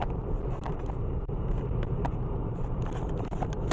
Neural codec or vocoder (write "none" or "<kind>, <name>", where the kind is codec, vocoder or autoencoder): none